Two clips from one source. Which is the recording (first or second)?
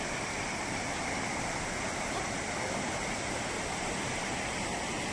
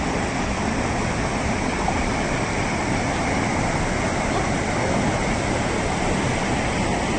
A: second